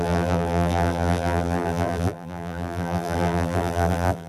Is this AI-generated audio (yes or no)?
yes